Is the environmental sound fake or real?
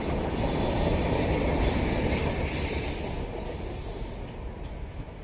fake